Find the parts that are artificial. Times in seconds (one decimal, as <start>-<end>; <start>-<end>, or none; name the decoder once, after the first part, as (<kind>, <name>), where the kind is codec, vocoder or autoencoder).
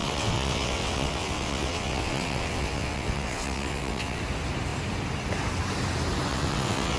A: 0.0-4.2 (vocoder, WaveNeXt); 6.3-7.0